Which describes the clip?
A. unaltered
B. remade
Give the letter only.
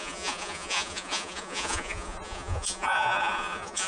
B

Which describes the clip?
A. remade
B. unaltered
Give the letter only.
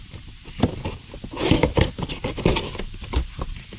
B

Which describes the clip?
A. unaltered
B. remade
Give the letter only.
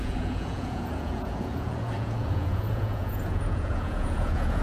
B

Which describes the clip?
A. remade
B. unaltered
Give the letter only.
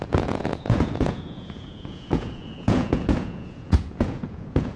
A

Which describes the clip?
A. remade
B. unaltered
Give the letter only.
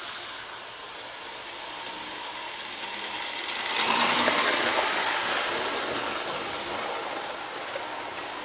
B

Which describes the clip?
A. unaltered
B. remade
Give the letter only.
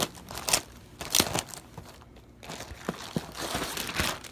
A